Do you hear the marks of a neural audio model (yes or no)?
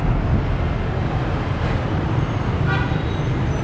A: no